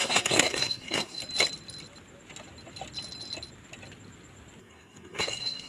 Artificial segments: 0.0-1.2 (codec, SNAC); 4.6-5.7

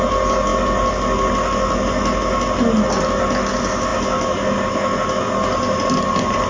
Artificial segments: none

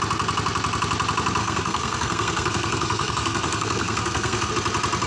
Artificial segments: 1.4-4.5 (codec, SNAC)

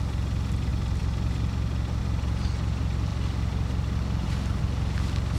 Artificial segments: none

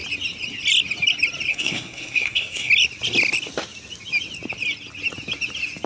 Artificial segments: 1.5-2.7 (codec, SNAC)

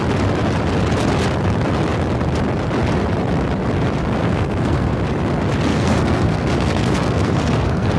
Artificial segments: 4.2-5.0 (codec, SNAC); 5.7-8.0

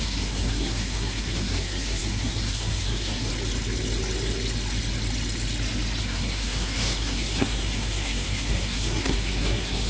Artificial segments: 0.0-3.3 (codec, SNAC); 6.0-9.9